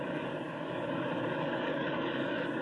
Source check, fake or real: fake